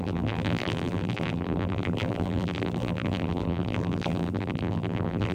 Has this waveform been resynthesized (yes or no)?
yes